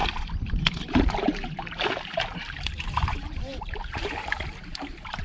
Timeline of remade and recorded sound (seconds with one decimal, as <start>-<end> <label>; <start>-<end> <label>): 0.0-0.5 recorded; 0.5-5.2 remade